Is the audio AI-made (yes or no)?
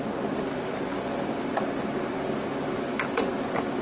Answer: no